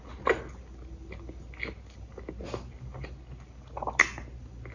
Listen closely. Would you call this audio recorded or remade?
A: recorded